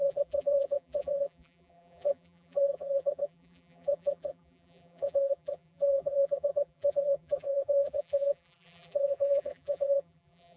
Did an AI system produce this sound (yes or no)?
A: yes